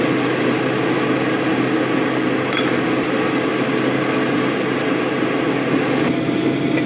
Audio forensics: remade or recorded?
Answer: recorded